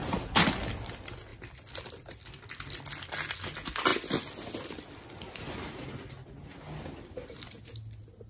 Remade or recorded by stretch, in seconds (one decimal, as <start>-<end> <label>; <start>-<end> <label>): 0.0-8.3 recorded